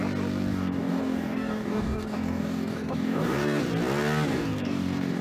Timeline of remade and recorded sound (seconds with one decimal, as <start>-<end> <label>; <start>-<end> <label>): 0.0-0.5 recorded; 0.5-3.6 remade; 3.6-4.3 recorded; 4.3-5.2 remade